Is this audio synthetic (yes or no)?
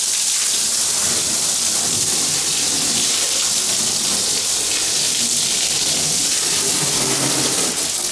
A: no